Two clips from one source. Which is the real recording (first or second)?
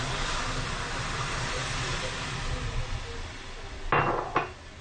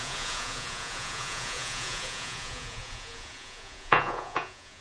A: first